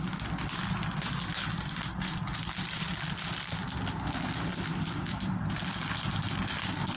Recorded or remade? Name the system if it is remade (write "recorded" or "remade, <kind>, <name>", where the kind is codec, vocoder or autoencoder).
recorded